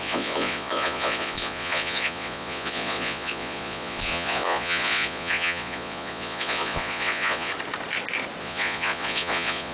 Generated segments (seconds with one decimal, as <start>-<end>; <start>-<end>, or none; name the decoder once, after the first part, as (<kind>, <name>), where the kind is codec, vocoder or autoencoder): 0.0-7.5 (vocoder, Vocos); 8.4-9.7